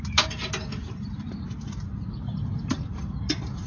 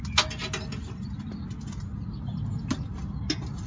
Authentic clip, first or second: second